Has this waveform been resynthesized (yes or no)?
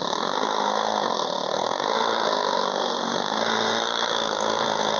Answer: yes